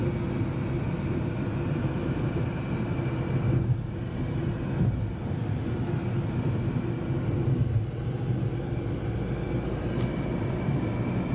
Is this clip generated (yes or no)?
no